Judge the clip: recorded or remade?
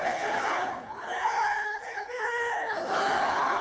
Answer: remade